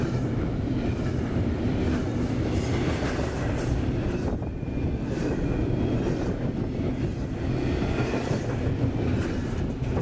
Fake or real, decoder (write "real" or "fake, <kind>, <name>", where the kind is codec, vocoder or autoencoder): real